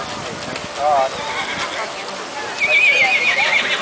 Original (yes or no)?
yes